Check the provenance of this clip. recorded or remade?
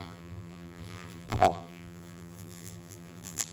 remade